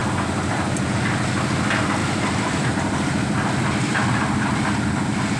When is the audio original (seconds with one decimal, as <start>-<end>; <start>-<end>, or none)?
0.9-2.0; 4.7-5.4